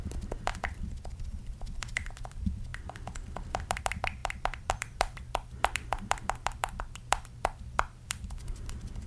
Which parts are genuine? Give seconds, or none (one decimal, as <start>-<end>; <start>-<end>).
none